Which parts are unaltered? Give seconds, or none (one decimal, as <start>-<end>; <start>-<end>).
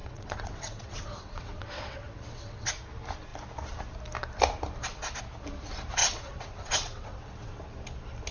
2.7-6.0; 7.6-8.3